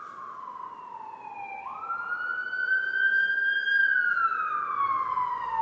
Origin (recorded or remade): recorded